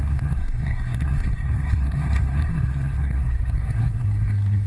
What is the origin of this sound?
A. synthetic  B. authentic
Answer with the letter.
A